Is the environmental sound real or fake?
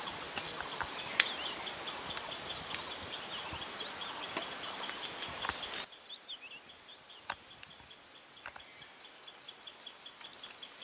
real